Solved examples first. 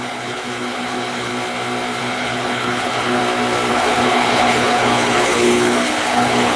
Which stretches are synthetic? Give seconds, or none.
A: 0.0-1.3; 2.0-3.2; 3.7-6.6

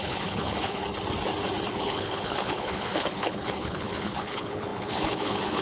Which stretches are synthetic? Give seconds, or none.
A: 0.0-0.8; 1.7-5.6